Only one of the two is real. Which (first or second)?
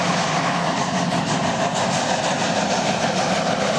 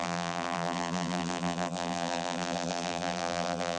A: first